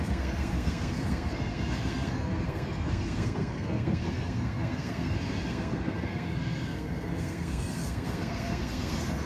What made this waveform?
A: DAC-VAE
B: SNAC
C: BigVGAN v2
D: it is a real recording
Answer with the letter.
B